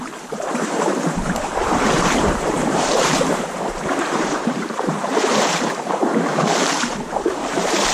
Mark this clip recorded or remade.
remade